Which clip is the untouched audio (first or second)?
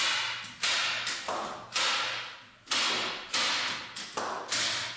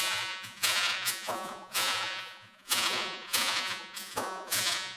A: first